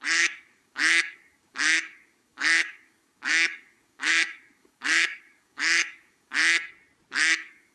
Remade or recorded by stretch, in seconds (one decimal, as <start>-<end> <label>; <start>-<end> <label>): 0.0-6.4 remade; 6.4-7.2 recorded; 7.2-7.7 remade